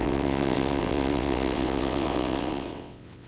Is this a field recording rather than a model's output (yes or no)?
no